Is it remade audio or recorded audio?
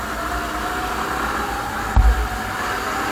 recorded